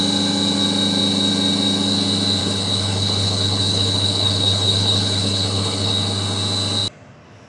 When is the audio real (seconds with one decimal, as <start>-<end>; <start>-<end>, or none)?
0.0-2.4; 5.9-7.5